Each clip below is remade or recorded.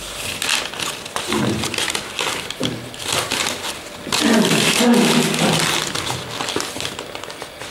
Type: recorded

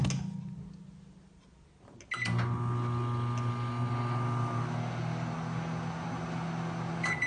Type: recorded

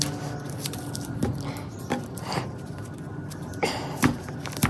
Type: recorded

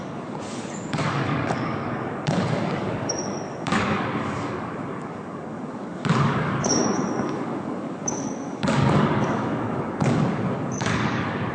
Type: remade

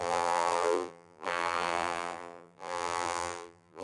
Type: remade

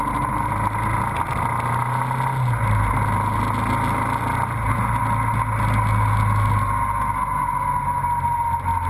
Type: recorded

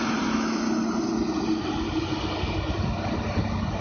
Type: recorded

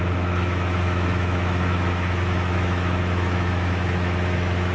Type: remade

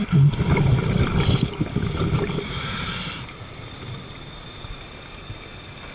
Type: recorded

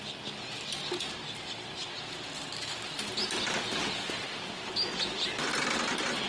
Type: recorded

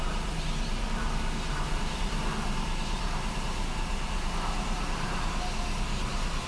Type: remade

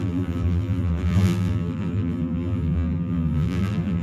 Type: remade